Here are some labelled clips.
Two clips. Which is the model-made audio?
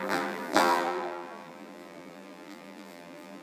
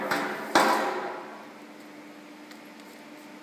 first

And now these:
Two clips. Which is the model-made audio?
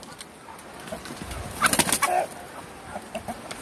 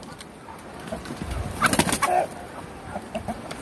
second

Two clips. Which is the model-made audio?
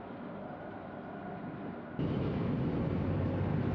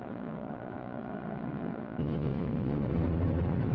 second